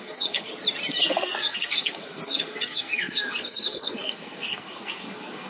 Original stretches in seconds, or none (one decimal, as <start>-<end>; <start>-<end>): 0.5-1.0

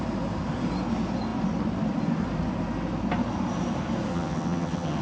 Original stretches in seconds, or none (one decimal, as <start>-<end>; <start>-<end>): 0.0-4.1

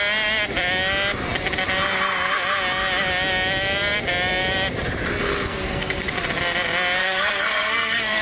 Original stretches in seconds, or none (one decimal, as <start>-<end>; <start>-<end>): 0.0-5.2; 6.1-7.0

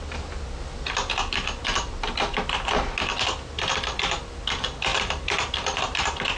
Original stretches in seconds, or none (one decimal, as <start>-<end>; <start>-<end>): 0.0-4.9; 5.8-6.4

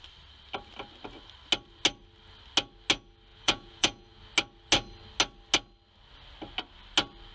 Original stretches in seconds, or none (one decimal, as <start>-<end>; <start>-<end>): 0.0-3.3; 4.2-7.3

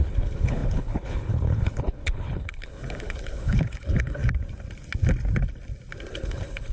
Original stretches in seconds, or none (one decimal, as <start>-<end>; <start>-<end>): 4.2-6.1

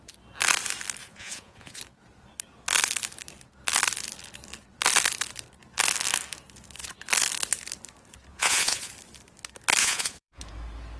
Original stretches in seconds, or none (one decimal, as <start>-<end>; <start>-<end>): 0.0-1.0; 1.8-8.3; 8.9-9.8; 10.4-11.0

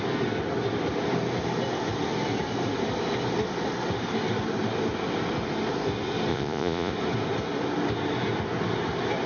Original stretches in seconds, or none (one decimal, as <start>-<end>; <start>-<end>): 0.0-6.3; 6.9-9.3